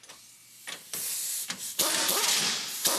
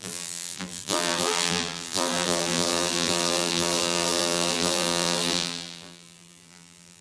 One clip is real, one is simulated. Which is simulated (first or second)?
second